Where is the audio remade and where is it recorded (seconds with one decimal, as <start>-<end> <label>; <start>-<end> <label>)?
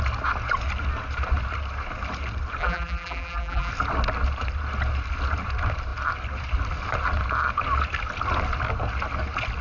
0.0-2.6 recorded; 2.6-3.7 remade; 3.7-9.6 recorded